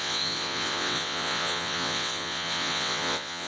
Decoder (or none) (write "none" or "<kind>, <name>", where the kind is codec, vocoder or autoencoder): vocoder, WaveNeXt